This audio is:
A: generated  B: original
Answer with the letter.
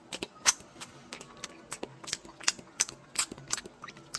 B